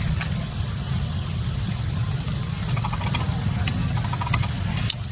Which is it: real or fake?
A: real